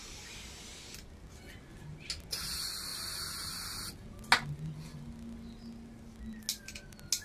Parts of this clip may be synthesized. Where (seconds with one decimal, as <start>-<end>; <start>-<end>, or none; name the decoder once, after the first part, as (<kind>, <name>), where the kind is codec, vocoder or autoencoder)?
none